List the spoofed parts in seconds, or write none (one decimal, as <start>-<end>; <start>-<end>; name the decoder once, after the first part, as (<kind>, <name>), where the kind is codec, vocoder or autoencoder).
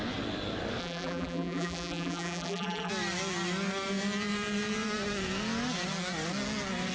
0.8-2.9 (vocoder, BigVGAN v2)